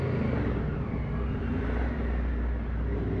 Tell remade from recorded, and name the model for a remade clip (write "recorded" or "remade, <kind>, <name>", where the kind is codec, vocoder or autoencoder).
recorded